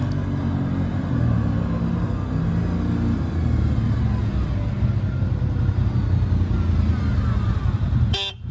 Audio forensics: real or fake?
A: real